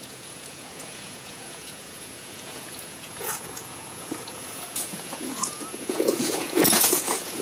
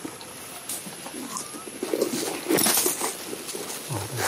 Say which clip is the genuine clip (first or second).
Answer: second